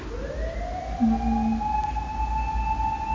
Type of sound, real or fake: real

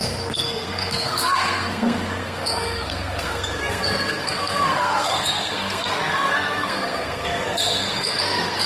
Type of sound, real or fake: fake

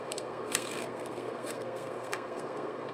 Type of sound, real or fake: fake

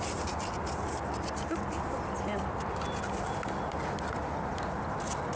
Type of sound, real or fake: real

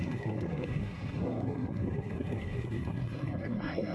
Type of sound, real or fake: fake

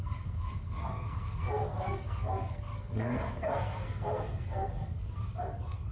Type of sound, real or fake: fake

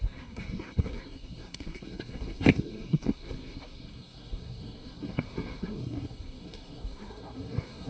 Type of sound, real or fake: fake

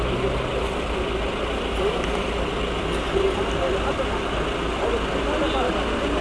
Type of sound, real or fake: real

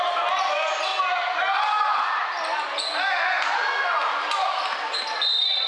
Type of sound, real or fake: real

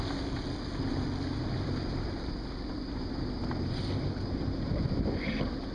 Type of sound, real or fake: real